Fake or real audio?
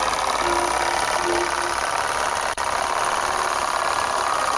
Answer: real